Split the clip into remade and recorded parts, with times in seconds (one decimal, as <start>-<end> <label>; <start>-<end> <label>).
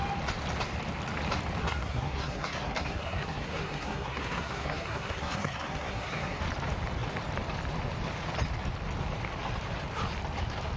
0.0-1.6 recorded; 1.6-6.4 remade; 6.4-10.8 recorded